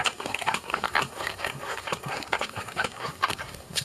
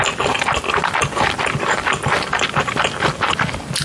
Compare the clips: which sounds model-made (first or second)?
first